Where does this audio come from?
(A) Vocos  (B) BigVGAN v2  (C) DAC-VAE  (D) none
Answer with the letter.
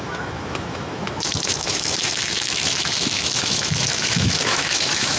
C